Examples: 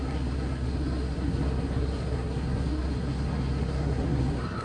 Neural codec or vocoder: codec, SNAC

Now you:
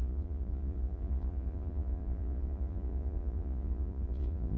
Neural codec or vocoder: vocoder, Vocos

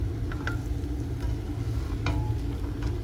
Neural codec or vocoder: none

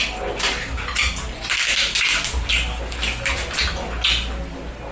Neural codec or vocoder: none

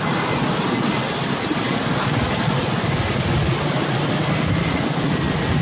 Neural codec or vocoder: none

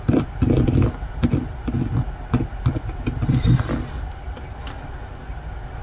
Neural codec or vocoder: none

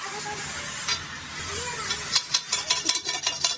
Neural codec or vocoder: none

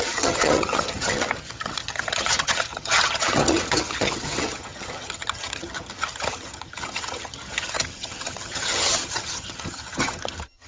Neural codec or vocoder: vocoder, HiFi-GAN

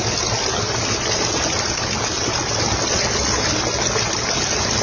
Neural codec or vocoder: none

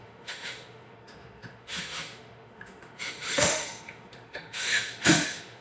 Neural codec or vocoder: autoencoder, DAC-VAE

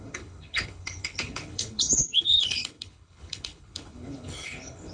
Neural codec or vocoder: codec, HILCodec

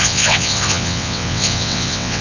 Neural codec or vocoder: vocoder, WaveNeXt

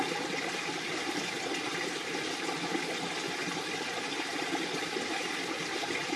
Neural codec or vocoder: vocoder, BigVGAN v2